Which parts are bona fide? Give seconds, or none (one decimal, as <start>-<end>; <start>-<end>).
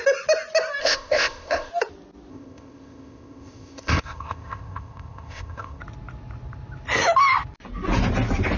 0.0-0.8; 1.7-2.3; 5.8-8.6